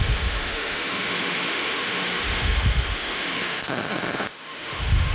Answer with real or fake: fake